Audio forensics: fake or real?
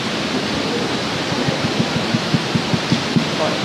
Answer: real